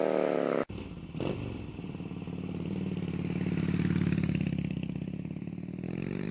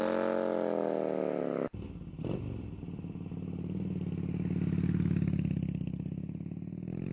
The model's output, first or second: first